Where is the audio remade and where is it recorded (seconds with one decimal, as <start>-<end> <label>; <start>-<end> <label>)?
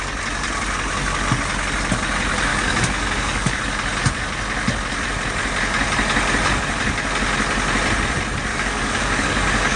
0.0-2.5 recorded; 2.5-3.6 remade; 3.6-8.5 recorded; 8.5-9.8 remade